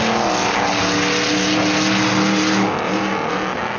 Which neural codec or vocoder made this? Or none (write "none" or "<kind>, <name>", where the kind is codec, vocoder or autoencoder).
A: none